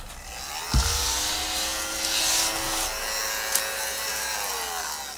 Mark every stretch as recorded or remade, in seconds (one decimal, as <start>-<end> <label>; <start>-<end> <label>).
0.0-5.2 recorded